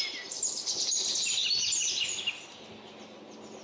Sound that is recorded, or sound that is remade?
recorded